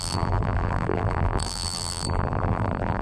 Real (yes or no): no